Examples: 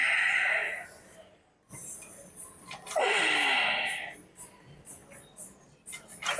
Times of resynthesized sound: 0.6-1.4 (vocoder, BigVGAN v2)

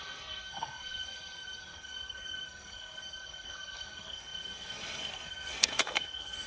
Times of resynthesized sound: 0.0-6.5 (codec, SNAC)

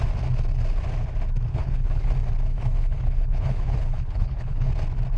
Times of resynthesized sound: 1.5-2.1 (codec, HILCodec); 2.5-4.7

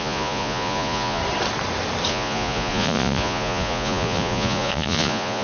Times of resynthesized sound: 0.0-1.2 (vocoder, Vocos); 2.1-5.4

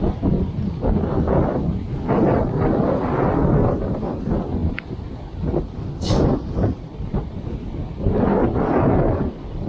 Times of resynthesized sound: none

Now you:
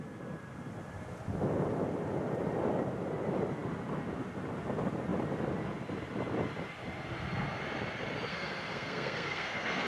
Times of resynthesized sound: 8.3-9.9 (codec, SNAC)

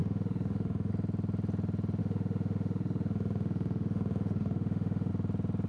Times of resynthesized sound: 0.0-0.9 (autoencoder, DAC-VAE); 2.0-5.1

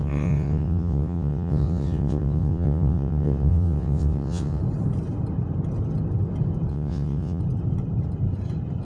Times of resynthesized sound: 0.0-4.6 (vocoder, WaveNeXt); 6.7-7.4